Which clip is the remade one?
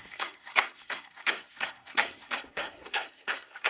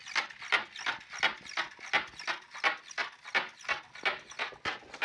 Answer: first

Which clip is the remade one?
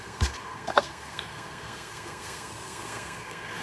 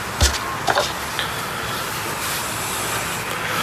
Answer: first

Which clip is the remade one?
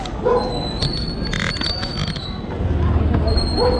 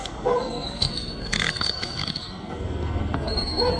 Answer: second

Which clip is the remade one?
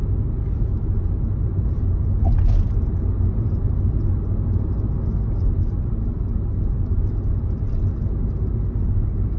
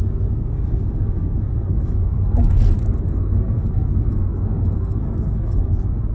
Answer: second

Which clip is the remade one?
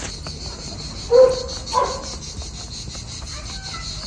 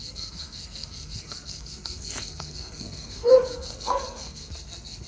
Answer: second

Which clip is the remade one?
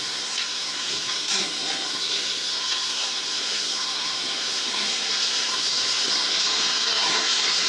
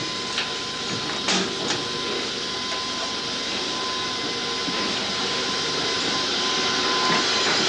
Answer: first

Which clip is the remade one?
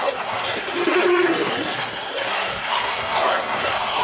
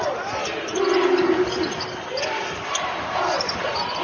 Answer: first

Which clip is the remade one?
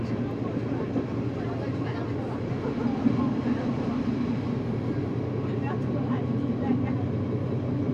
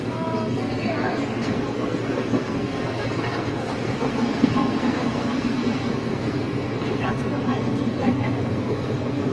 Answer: second